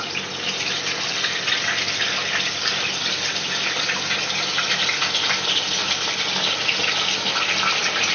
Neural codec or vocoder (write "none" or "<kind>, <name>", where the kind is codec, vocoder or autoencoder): none